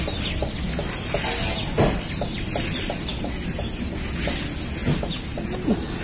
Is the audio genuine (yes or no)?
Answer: yes